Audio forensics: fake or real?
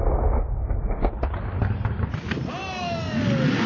real